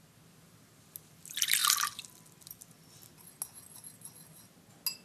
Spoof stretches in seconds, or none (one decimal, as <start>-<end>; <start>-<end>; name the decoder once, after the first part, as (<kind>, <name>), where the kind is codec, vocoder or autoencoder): 1.6-2.1 (vocoder, BigVGAN v2)